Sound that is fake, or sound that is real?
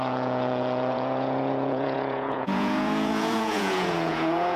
fake